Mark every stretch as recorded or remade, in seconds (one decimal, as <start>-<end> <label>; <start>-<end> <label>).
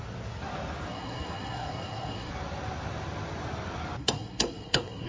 0.0-0.9 recorded; 0.9-2.3 remade; 2.3-4.0 recorded; 4.0-5.1 remade